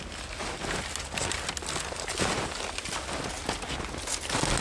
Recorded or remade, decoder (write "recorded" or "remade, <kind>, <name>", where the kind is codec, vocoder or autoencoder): recorded